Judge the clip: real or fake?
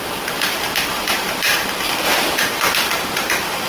fake